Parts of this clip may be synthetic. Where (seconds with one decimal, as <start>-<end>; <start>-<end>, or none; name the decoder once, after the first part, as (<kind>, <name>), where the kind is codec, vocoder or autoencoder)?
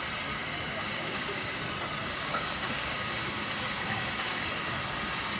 0.4-1.6 (codec, DAC); 2.0-4.5